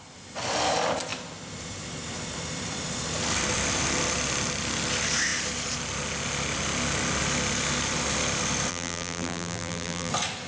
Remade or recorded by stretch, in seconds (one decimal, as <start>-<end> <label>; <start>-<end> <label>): 0.0-8.7 recorded; 8.7-10.1 remade; 10.1-10.5 recorded